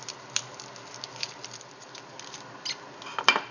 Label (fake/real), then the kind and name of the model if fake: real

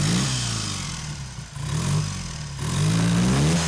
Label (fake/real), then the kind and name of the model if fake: real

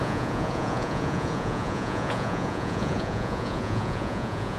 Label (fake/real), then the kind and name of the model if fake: fake, vocoder, Vocos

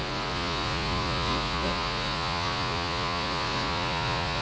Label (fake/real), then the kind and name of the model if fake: fake, vocoder, Vocos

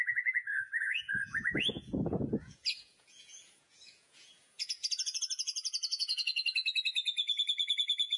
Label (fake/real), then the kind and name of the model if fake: fake, vocoder, Vocos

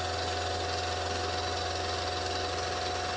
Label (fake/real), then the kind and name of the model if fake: real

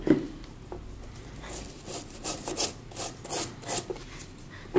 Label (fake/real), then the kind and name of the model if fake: real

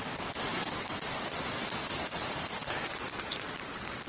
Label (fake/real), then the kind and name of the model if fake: real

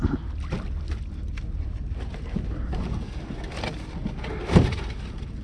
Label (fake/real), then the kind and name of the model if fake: real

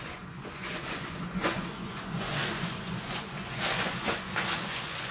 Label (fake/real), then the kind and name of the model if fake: fake, vocoder, Vocos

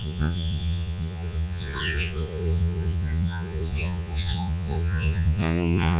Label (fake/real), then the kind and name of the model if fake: fake, vocoder, Vocos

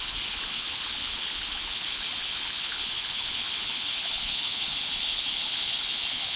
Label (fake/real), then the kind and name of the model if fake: real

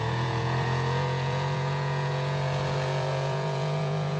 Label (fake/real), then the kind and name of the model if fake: fake, vocoder, Vocos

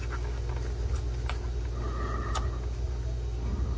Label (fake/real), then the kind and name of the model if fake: real